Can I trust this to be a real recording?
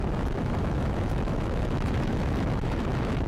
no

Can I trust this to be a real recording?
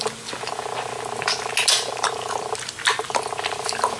yes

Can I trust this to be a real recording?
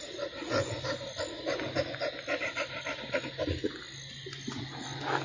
yes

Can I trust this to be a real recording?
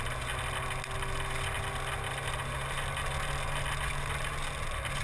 yes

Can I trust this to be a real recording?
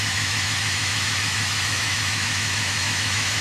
no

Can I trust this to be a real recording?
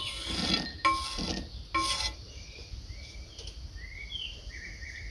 yes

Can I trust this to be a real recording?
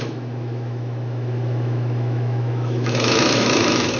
no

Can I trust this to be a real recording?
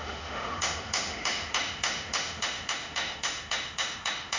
no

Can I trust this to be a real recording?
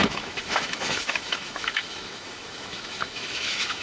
no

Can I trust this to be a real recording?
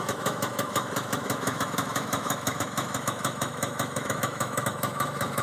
no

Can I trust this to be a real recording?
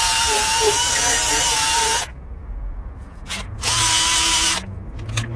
yes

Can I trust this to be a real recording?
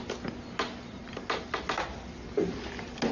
yes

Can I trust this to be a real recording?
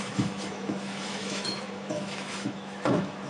no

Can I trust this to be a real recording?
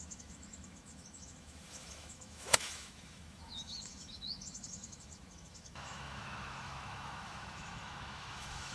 no